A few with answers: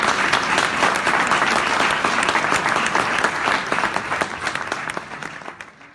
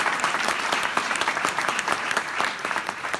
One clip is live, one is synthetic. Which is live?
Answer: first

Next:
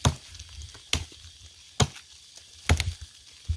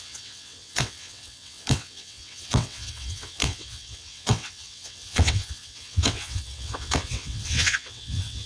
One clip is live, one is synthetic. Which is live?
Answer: first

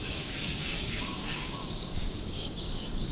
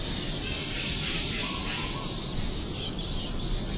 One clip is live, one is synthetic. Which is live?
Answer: second